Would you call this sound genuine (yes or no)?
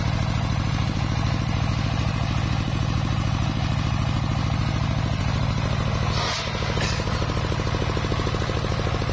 yes